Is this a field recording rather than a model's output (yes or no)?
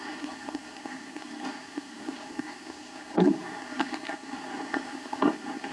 no